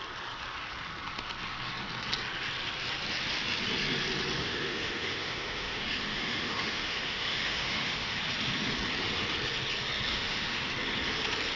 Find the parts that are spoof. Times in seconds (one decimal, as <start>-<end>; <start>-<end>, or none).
4.4-8.2; 10.1-10.7